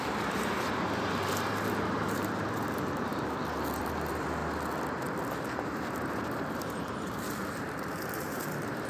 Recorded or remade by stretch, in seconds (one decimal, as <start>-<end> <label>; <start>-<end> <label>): 0.0-3.1 remade; 3.1-3.8 recorded; 3.8-4.4 remade; 4.4-5.3 recorded; 5.3-8.9 remade